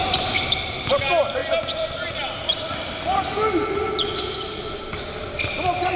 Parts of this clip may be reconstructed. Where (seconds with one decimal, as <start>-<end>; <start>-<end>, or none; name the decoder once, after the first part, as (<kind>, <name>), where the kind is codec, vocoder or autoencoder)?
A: none